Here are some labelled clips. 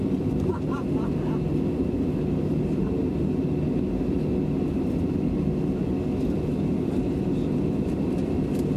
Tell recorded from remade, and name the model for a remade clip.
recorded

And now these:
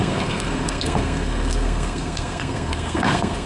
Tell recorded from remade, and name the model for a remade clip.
remade, codec, SNAC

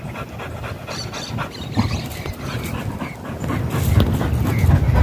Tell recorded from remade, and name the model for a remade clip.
recorded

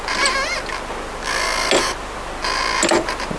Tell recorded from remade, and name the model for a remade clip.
recorded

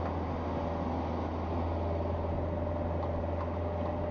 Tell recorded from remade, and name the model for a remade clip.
recorded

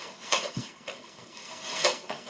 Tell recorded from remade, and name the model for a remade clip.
remade, codec, SNAC